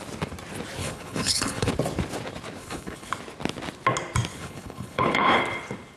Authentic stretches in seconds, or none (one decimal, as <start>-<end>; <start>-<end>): 0.0-0.8; 1.7-2.6; 3.1-4.3; 5.4-6.0